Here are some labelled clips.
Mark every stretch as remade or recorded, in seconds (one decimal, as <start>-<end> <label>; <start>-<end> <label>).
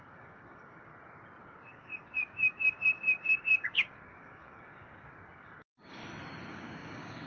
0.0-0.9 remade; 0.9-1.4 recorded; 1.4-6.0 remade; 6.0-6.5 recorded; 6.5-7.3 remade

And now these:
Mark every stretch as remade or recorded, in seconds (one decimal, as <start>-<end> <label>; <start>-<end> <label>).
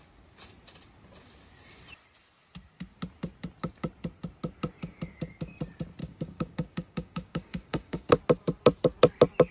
0.0-6.0 recorded; 6.0-8.1 remade; 8.1-9.5 recorded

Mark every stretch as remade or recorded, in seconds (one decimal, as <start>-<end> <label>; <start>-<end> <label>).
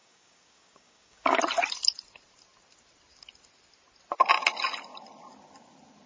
0.0-1.4 remade; 1.4-6.1 recorded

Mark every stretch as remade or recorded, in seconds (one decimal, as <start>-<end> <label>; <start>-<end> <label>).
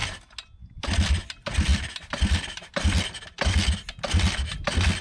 0.0-5.0 recorded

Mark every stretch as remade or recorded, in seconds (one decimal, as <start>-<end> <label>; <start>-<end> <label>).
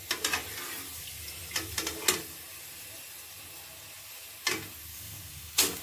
0.0-4.9 recorded; 4.9-5.8 remade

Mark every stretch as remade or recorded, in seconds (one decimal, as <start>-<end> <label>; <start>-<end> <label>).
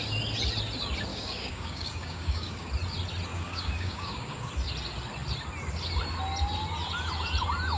0.0-1.1 recorded; 1.1-2.7 remade; 2.7-3.3 recorded; 3.3-4.5 remade; 4.5-7.8 recorded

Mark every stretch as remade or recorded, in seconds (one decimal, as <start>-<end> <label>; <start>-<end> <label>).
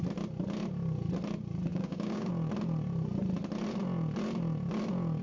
0.0-1.7 recorded; 1.7-2.3 remade; 2.3-5.2 recorded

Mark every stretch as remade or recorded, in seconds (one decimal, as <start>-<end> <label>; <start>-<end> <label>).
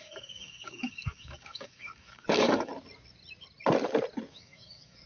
0.0-2.7 remade; 2.7-4.3 recorded; 4.3-5.1 remade